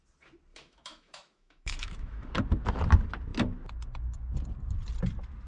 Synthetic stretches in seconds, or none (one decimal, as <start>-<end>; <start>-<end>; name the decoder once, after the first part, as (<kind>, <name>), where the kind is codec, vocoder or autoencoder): 0.5-2.3 (autoencoder, DAC-VAE)